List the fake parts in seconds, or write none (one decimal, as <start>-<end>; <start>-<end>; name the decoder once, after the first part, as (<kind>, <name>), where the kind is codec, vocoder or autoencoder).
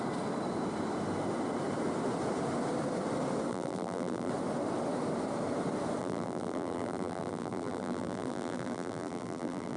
3.5-4.3 (vocoder, BigVGAN v2); 6.0-9.8